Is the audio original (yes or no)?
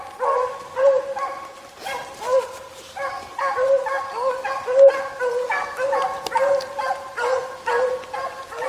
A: yes